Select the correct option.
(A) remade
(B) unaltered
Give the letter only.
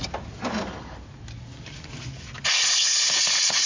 B